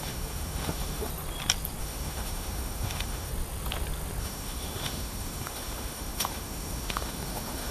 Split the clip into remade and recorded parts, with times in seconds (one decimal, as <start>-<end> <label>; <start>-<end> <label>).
0.0-1.1 remade; 1.1-1.8 recorded; 1.8-3.3 remade; 3.3-4.2 recorded; 4.2-7.7 remade